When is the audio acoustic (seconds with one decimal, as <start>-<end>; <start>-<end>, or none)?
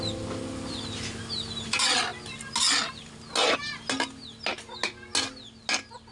0.0-6.1